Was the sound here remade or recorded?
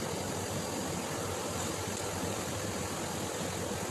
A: recorded